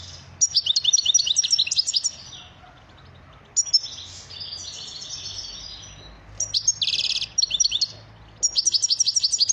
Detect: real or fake real